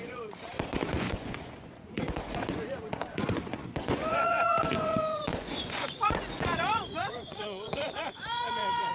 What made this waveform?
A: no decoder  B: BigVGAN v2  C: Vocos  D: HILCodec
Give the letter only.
C